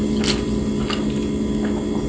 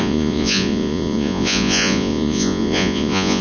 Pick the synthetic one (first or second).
second